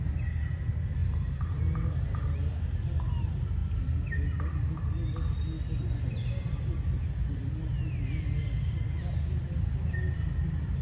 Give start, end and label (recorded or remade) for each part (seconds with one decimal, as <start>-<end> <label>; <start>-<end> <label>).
0.0-1.0 recorded; 1.0-1.6 remade; 1.6-10.8 recorded